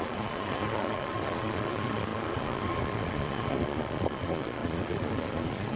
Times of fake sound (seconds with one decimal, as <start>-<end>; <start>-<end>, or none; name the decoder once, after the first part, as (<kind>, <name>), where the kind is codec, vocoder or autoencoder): 0.0-5.8 (vocoder, Vocos)